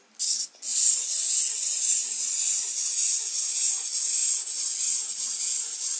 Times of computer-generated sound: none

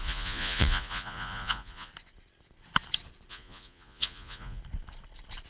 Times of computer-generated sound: 0.0-1.9 (vocoder, Vocos); 3.3-4.6

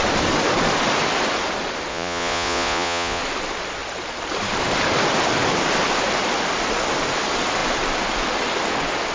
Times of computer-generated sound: 1.9-3.2 (vocoder, Vocos)

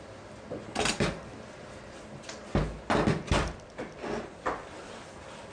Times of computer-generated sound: none

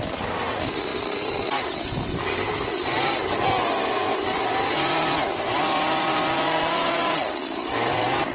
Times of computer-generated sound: none

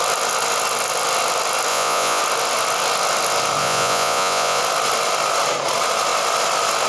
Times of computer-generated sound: 1.7-2.2 (vocoder, Vocos); 3.6-4.6